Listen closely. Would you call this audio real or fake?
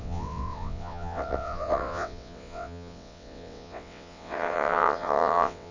fake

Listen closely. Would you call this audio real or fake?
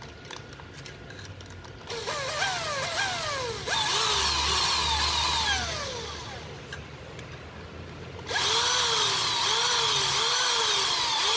real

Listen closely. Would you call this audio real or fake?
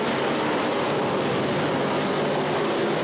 real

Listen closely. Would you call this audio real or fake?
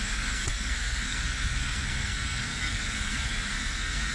fake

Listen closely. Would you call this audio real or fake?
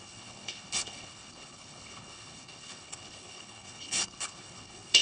fake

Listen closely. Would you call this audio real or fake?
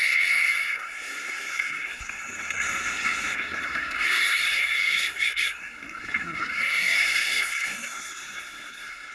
fake